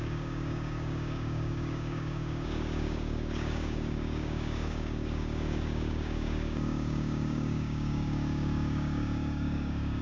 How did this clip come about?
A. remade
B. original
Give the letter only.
A